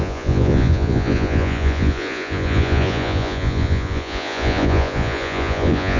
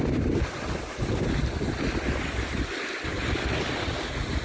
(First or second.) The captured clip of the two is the second